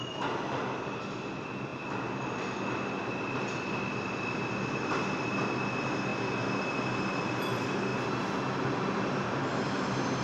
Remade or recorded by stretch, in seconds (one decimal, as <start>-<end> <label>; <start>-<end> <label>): 0.0-10.2 recorded